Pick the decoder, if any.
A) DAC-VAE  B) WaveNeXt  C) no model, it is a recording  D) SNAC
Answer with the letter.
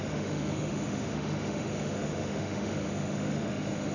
A